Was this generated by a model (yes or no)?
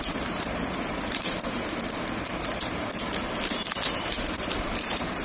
yes